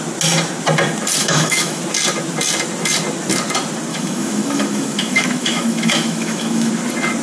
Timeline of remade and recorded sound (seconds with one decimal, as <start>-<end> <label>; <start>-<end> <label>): 0.0-1.2 recorded; 1.2-1.8 remade; 1.8-3.9 recorded; 3.9-6.7 remade; 6.7-7.2 recorded